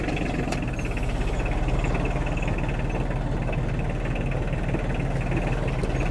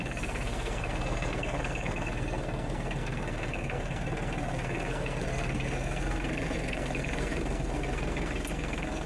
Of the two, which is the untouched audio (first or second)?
first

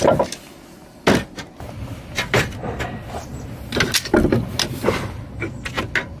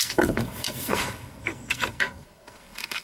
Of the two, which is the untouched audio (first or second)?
first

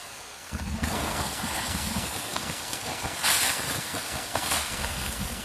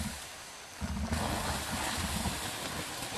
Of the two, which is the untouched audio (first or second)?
second